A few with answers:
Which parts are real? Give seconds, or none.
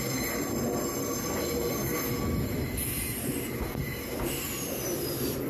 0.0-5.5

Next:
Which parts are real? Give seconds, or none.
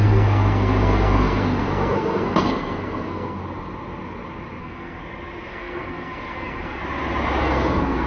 3.4-4.6; 5.0-5.5; 6.8-7.4